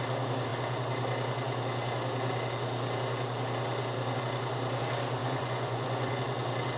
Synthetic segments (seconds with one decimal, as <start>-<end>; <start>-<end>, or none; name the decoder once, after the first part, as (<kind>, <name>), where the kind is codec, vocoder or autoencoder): 5.2-6.2 (vocoder, Vocos)

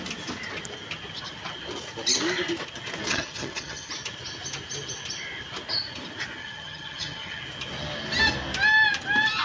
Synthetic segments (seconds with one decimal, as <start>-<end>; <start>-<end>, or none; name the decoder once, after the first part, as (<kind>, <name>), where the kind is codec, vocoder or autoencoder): 3.1-3.9 (vocoder, HiFi-GAN); 6.4-7.4

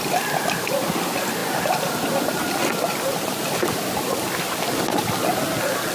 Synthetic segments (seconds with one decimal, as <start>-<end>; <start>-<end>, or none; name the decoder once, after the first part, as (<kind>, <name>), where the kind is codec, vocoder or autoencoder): none

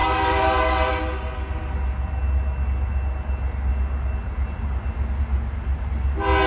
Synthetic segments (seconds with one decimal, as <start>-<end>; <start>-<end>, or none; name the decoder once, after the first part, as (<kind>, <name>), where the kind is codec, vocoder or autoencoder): 0.0-0.9 (vocoder, BigVGAN v2)

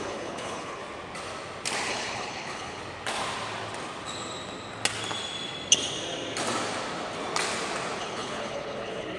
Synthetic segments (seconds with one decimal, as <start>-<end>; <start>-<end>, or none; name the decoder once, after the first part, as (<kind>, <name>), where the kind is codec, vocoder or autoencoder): 0.0-0.8 (codec, HILCodec); 1.9-2.8; 8.0-9.2

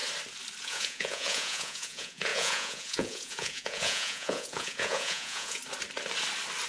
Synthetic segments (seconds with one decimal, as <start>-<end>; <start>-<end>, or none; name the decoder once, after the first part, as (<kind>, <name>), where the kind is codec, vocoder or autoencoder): 0.6-5.6 (vocoder, Vocos)

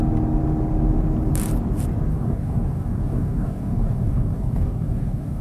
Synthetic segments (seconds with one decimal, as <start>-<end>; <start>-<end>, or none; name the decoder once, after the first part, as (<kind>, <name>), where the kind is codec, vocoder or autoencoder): 2.1-5.4 (codec, DAC)

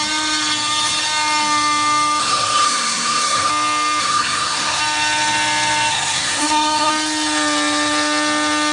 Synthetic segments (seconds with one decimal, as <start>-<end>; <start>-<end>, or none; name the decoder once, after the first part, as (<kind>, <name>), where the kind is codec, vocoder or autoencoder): 2.2-3.5 (codec, SNAC); 4.0-4.8; 5.9-6.9